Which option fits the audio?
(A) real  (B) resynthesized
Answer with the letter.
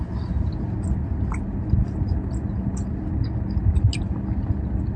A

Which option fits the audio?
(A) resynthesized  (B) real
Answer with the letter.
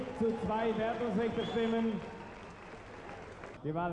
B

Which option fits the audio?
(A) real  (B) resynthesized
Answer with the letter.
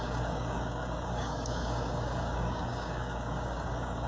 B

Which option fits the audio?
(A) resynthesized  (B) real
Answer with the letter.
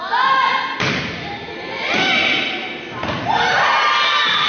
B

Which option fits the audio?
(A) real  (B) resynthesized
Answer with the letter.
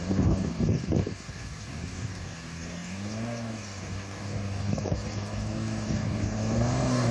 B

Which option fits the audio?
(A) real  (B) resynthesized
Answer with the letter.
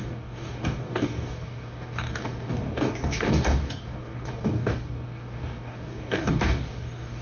B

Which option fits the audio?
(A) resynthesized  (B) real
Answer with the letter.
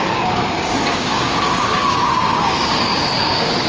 A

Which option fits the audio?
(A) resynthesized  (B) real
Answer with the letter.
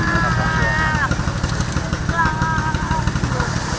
B